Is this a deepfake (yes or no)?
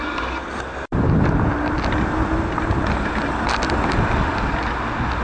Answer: no